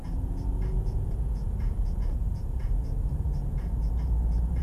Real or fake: fake